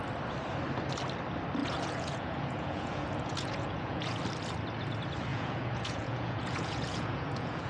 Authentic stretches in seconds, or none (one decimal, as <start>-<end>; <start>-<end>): 0.0-1.6; 4.2-5.3